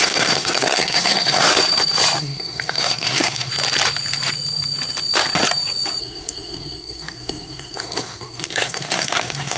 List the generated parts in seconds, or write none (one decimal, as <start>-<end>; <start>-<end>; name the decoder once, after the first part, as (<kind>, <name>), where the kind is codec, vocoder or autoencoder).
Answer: 0.0-1.5 (codec, SNAC); 2.2-3.5; 6.0-9.6